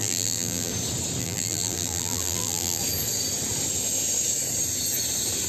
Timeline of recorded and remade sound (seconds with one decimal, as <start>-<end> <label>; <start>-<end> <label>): 0.0-0.7 remade; 0.7-1.2 recorded; 1.2-2.8 remade; 2.8-5.5 recorded